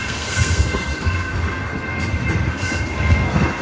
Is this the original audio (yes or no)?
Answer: no